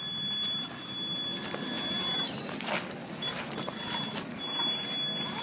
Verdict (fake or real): real